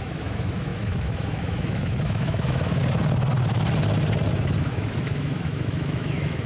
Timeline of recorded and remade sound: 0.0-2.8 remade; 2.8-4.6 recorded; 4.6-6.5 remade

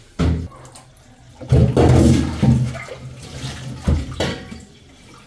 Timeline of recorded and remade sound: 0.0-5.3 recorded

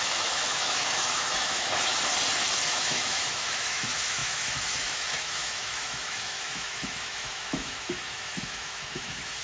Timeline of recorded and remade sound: 0.0-1.9 remade; 1.9-2.7 recorded; 2.7-9.4 remade

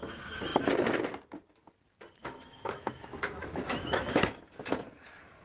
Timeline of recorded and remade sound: 0.0-2.2 recorded; 2.2-4.5 remade; 4.5-5.4 recorded

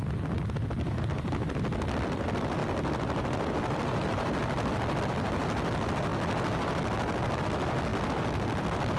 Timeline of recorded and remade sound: 0.0-9.0 recorded